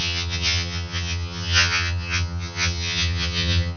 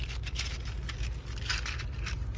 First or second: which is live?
second